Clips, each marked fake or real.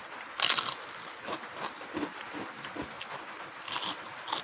real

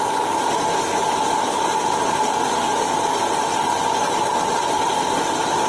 real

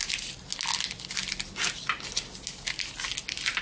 real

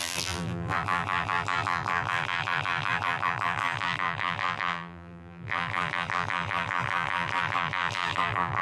fake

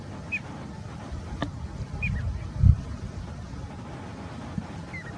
real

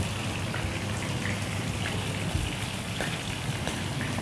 fake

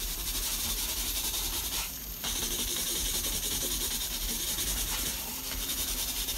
fake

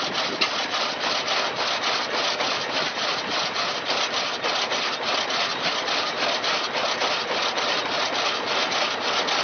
real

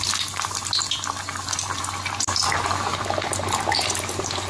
real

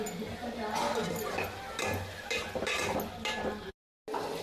real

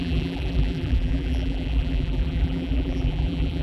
fake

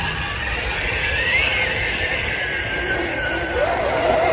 real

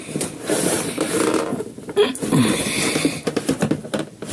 fake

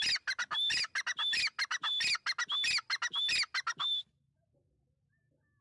real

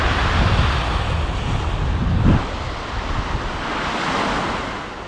real